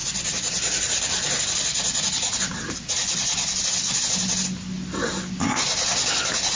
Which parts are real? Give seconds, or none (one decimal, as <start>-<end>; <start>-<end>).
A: 0.0-6.6